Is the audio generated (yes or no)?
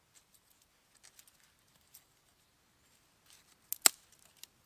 no